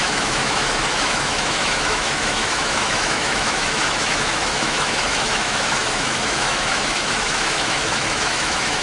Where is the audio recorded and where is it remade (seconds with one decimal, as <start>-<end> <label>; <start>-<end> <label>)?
0.0-8.8 remade